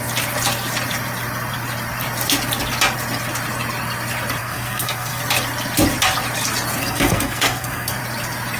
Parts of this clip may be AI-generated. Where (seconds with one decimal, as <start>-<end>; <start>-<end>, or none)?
4.4-5.2; 6.8-8.0